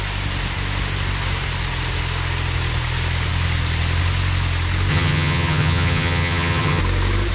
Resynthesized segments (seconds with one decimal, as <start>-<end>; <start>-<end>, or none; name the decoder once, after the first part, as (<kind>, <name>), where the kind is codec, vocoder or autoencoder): 4.9-6.8 (vocoder, HiFi-GAN)